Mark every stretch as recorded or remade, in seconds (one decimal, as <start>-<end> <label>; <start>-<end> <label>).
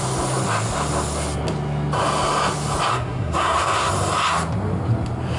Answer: 0.0-2.9 recorded; 2.9-3.9 remade; 3.9-5.4 recorded